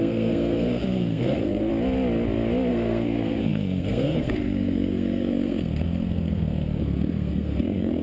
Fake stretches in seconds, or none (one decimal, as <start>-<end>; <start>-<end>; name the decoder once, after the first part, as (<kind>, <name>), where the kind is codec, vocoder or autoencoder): 0.0-1.7 (codec, SNAC); 2.7-8.0